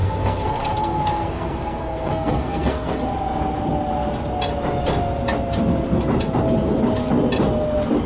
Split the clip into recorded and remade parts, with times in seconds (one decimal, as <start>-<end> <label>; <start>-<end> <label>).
0.0-3.0 remade; 3.0-8.1 recorded